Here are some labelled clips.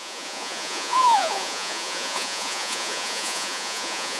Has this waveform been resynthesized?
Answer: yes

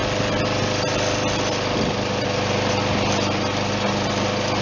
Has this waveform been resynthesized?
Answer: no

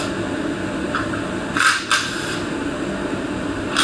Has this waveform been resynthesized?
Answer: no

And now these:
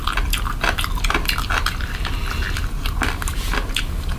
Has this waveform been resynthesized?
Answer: no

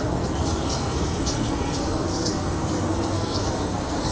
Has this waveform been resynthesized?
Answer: yes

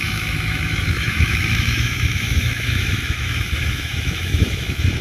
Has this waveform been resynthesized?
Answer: yes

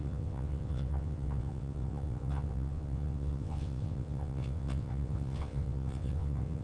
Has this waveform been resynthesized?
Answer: yes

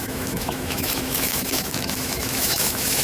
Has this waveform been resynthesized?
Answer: yes